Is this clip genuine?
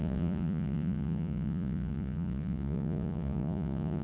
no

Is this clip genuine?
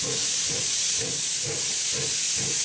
yes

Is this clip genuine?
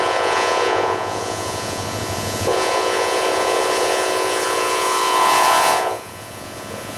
no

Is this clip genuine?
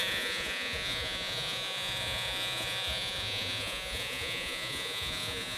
no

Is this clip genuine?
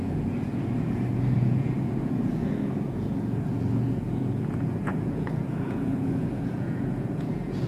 no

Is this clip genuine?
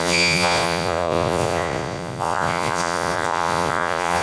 no